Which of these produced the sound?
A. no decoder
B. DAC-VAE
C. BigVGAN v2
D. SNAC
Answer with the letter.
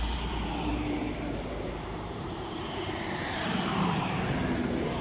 C